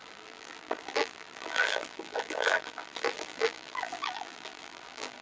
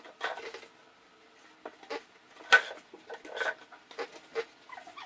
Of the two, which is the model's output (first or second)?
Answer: first